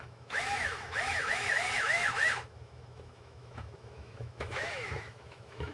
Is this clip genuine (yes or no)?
no